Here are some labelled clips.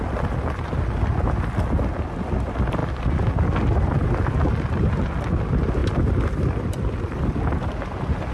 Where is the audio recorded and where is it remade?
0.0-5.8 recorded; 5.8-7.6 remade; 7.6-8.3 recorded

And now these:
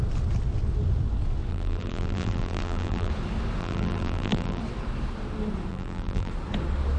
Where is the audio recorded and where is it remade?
0.0-1.5 recorded; 1.5-3.1 remade; 3.1-3.6 recorded; 3.6-4.6 remade; 4.6-5.7 recorded; 5.7-6.3 remade; 6.3-7.0 recorded

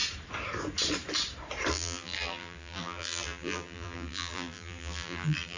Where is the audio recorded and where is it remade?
0.0-1.7 recorded; 1.7-5.6 remade

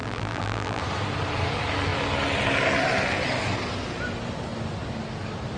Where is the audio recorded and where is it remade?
0.0-0.8 remade; 0.8-5.6 recorded